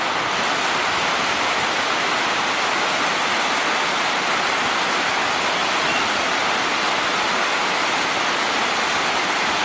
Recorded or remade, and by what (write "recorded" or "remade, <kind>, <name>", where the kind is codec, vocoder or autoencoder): recorded